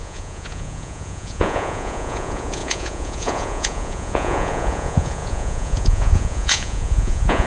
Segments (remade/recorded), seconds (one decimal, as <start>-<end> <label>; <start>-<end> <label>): 0.0-7.5 remade

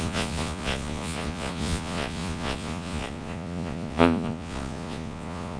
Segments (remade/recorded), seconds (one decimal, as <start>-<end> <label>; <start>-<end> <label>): 0.0-5.6 remade